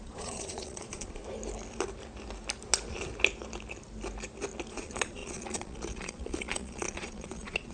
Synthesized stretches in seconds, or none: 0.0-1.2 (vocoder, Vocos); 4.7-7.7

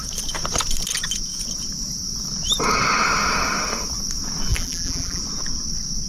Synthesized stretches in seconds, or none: 4.5-5.2 (vocoder, BigVGAN v2)

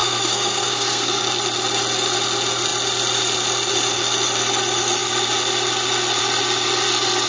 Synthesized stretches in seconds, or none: 0.0-1.2 (codec, SNAC)

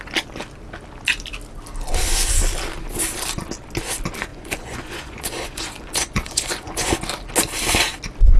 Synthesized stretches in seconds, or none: 4.3-6.9 (vocoder, Vocos)

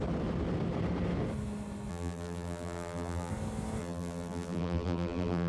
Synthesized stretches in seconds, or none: 1.9-3.3 (vocoder, BigVGAN v2); 3.8-5.5

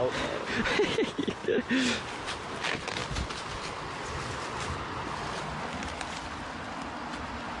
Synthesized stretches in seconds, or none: none

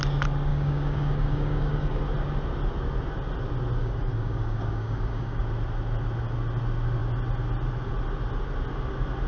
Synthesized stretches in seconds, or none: 0.5-2.0 (codec, DAC); 3.8-5.4

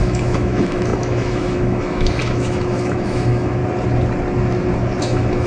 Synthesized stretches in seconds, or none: 0.0-3.6 (autoencoder, DAC-VAE); 5.0-5.5